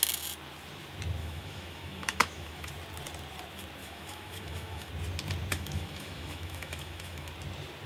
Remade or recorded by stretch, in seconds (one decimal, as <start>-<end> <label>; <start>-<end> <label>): 0.0-1.2 recorded; 1.2-2.7 remade; 2.7-3.8 recorded; 3.8-4.9 remade; 4.9-5.5 recorded; 5.5-7.3 remade; 7.3-7.9 recorded